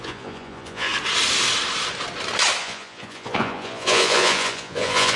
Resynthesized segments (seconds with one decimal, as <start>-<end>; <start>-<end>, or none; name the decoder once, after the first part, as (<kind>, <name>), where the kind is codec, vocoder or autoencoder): 0.0-0.9 (vocoder, Vocos); 2.6-5.2